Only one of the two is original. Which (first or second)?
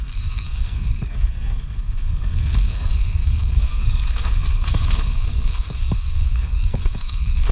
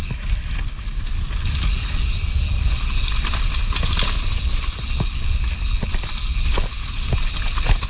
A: second